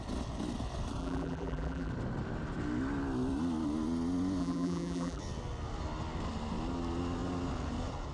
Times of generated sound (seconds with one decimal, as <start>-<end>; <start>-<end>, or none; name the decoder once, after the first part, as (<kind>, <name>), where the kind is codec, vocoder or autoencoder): 1.0-1.9 (vocoder, BigVGAN v2); 4.4-5.2